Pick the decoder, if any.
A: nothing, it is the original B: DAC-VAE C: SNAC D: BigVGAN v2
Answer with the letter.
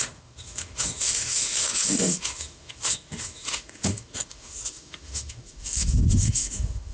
B